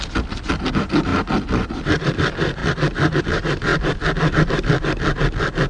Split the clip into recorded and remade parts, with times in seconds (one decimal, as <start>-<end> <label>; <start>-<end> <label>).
0.0-5.7 recorded